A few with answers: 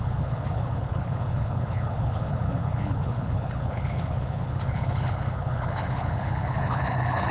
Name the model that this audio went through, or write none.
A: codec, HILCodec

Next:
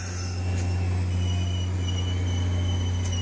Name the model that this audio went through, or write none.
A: none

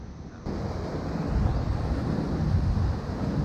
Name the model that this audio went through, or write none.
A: none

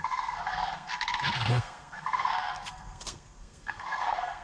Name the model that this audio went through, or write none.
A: codec, SNAC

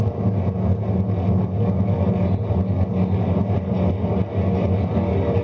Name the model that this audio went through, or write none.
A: none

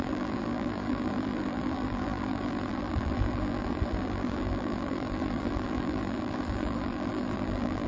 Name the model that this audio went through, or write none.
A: vocoder, BigVGAN v2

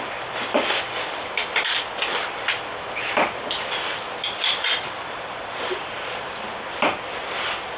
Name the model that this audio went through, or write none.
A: vocoder, BigVGAN v2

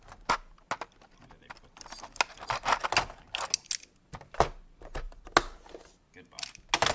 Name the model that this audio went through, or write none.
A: none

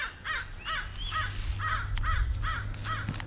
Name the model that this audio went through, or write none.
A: none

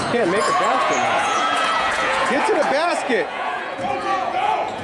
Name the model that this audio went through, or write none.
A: vocoder, Vocos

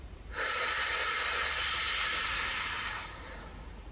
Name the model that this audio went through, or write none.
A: none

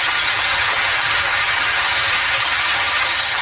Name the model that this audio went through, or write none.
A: vocoder, HiFi-GAN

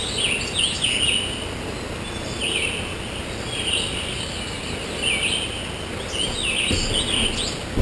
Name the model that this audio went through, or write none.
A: none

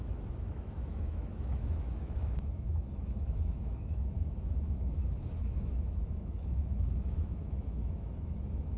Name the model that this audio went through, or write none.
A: autoencoder, DAC-VAE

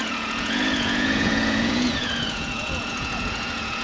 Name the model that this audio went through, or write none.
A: vocoder, Vocos